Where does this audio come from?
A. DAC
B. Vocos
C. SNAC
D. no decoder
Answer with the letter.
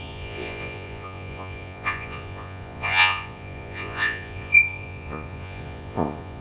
B